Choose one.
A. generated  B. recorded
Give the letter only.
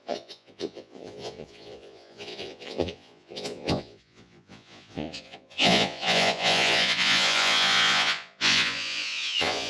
A